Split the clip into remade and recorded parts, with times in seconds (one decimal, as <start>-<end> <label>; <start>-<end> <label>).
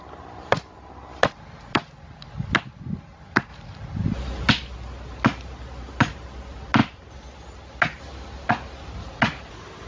0.0-9.9 recorded